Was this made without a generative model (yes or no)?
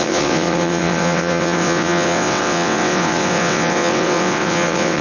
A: no